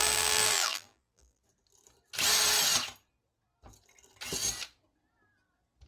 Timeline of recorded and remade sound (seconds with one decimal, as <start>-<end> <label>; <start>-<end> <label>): 0.0-1.4 remade; 1.4-5.9 recorded